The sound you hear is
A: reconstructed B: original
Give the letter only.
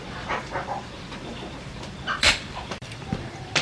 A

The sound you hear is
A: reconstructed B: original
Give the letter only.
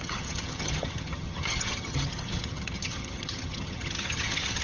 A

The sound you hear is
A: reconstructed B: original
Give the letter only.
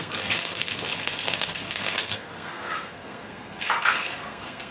A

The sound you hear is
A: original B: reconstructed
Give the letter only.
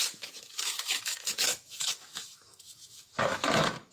B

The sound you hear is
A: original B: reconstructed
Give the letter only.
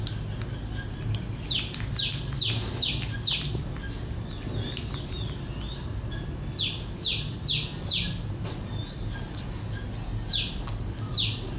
A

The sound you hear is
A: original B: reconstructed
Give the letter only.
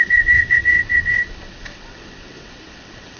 B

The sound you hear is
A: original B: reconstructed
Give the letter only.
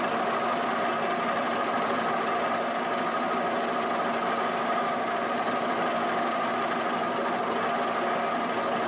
A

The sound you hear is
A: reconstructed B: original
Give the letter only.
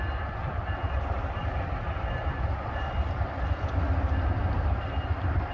B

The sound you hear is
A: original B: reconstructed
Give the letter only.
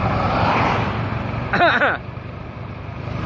A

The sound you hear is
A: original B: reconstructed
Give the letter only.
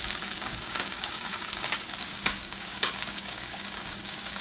B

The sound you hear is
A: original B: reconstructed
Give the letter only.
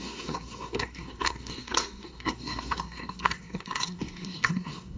B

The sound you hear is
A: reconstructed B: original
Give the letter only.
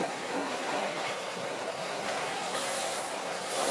A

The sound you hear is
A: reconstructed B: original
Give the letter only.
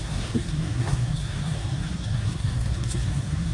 A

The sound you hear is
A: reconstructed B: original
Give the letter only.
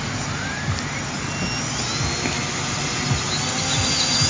B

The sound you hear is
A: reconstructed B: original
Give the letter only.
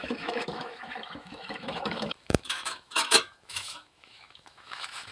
A